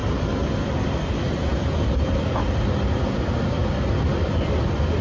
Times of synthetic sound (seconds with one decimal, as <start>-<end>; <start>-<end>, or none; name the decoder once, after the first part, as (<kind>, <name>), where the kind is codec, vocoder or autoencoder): none

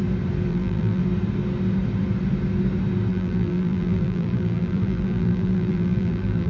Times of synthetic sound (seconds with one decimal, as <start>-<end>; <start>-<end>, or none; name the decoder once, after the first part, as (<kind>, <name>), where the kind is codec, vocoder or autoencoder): 0.5-1.0 (vocoder, BigVGAN v2); 3.1-6.5